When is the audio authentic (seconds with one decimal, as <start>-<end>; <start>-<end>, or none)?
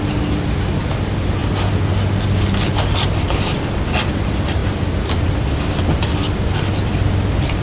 0.0-7.6